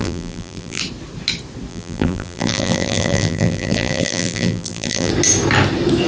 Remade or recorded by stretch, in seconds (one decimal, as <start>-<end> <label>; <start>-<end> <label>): 0.0-0.8 remade; 0.8-1.7 recorded; 1.7-5.1 remade; 5.1-6.1 recorded